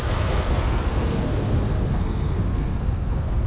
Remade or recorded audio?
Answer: remade